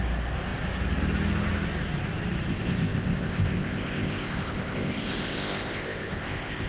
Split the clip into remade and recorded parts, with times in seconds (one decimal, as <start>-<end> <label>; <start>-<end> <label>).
0.0-2.5 recorded; 2.5-6.7 remade

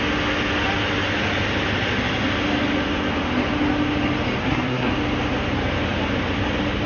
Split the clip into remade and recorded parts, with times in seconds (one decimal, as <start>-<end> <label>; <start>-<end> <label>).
0.0-4.4 recorded; 4.4-4.9 remade; 4.9-6.9 recorded

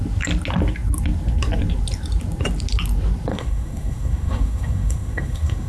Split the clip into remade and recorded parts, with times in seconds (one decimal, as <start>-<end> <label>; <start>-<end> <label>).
0.0-3.3 recorded; 3.3-5.7 remade